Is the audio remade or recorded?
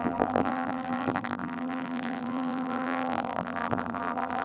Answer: remade